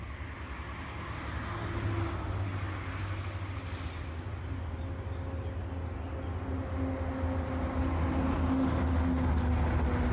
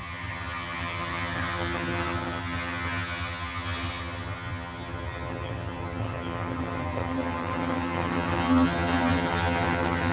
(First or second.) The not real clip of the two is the second